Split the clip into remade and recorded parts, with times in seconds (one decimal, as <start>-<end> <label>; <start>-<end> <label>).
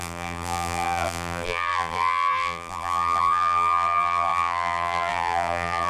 0.0-5.9 remade